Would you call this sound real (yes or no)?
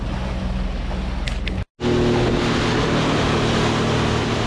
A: yes